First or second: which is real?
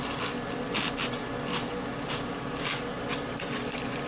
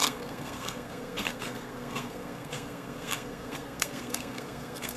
first